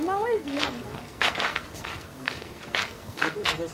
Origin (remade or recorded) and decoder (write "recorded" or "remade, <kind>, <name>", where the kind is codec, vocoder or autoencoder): remade, codec, SNAC